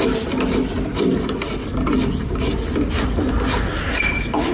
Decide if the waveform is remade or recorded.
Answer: recorded